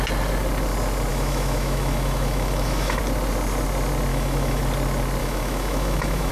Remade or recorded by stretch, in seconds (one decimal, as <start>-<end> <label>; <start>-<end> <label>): 0.0-1.1 recorded; 1.1-3.0 remade; 3.0-4.1 recorded; 4.1-4.6 remade; 4.6-5.2 recorded; 5.2-6.3 remade

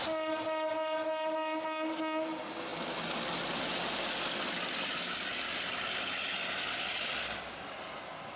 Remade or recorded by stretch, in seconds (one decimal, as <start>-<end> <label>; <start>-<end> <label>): 0.0-8.4 recorded

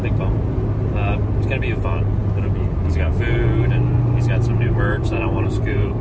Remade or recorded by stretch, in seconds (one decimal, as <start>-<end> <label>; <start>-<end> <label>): 0.0-4.5 recorded; 4.5-6.0 remade

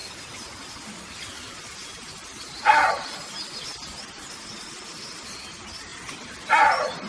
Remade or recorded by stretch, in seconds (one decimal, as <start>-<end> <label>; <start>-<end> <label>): 0.0-4.3 remade; 4.3-5.9 recorded; 5.9-6.6 remade; 6.6-7.1 recorded